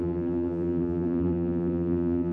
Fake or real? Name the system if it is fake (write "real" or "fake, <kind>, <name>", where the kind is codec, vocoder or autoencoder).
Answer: fake, vocoder, BigVGAN v2